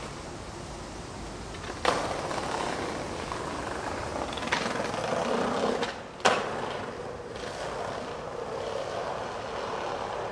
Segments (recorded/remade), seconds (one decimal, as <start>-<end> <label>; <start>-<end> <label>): 0.0-10.3 recorded